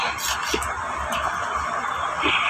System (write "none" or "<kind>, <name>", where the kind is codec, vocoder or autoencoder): none